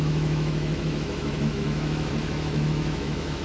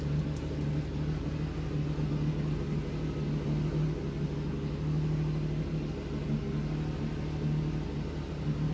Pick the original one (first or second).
second